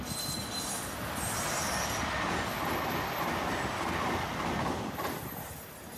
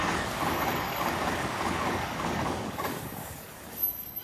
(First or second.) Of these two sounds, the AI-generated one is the second